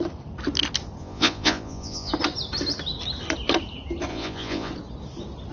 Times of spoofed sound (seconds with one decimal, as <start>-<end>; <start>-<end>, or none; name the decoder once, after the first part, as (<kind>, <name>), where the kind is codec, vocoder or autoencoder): 1.0-2.1 (vocoder, Vocos); 4.1-4.7